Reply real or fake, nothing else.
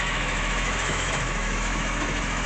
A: fake